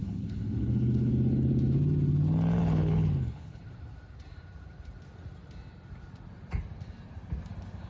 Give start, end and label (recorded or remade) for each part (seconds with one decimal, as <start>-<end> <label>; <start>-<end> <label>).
0.0-1.1 remade; 1.1-2.6 recorded; 2.6-3.6 remade; 3.6-7.9 recorded